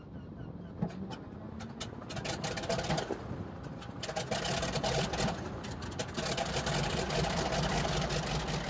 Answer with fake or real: real